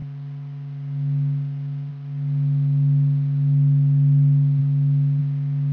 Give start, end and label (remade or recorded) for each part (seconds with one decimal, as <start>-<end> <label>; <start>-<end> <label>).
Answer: 0.0-5.7 recorded